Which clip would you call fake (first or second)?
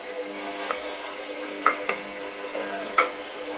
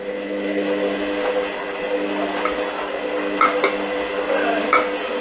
first